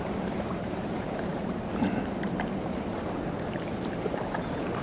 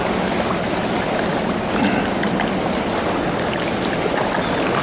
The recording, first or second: second